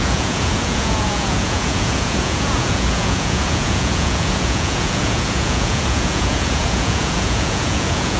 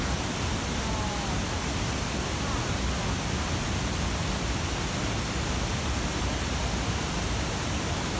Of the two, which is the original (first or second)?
second